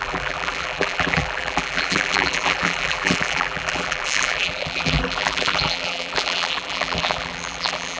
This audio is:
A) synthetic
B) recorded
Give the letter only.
A